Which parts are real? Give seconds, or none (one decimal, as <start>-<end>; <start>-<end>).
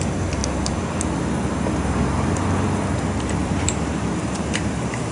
0.0-3.4